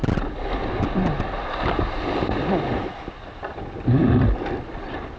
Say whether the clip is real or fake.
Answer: real